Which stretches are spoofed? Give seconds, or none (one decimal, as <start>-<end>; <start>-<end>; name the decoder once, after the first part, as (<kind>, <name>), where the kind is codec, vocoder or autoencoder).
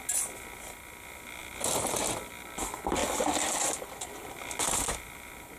none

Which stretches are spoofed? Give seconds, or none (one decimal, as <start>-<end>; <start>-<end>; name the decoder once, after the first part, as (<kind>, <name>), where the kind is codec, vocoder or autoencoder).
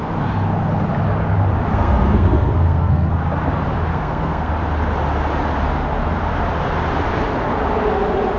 1.7-3.1 (codec, SNAC); 3.9-4.5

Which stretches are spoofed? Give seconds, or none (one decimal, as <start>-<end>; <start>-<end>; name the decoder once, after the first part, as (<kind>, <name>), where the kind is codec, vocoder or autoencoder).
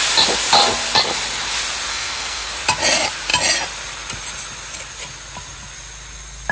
1.9-2.5 (codec, SNAC)